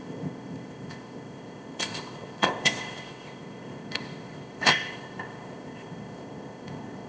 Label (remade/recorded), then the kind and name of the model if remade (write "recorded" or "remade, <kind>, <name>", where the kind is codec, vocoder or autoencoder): remade, codec, ZipCodec